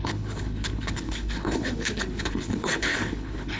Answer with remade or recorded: remade